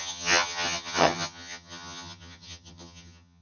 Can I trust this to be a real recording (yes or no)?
no